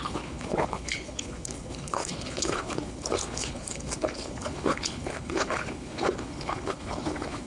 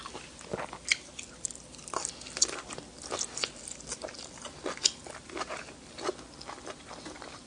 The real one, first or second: second